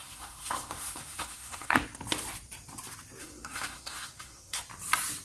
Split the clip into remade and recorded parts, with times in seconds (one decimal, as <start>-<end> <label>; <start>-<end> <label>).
0.0-1.8 remade; 1.8-3.2 recorded; 3.2-4.6 remade; 4.6-5.2 recorded